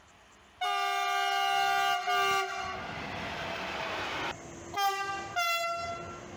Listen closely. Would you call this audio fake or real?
real